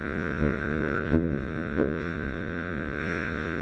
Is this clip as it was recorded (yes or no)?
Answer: no